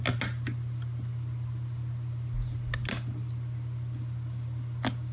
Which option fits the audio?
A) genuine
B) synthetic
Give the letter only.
A